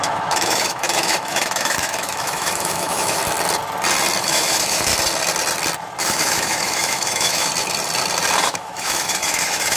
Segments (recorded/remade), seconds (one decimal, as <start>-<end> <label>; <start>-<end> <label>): 0.0-3.2 remade; 3.2-4.2 recorded; 4.2-4.9 remade; 4.9-6.0 recorded; 6.0-7.5 remade; 7.5-8.4 recorded; 8.4-9.8 remade